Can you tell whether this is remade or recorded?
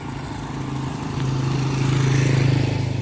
recorded